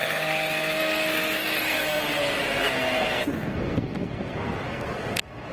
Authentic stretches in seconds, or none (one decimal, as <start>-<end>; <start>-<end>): 2.0-2.4